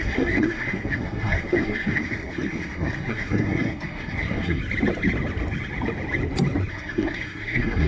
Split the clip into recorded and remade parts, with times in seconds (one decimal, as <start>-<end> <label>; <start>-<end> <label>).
0.0-4.6 remade; 4.6-6.7 recorded; 6.7-7.9 remade